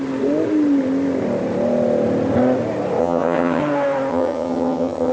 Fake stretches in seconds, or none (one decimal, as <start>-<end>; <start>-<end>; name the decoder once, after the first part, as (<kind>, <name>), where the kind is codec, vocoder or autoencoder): 3.0-3.6 (vocoder, HiFi-GAN); 4.1-5.1